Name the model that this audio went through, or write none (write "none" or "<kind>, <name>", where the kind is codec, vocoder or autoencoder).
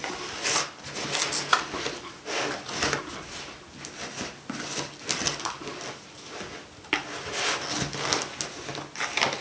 none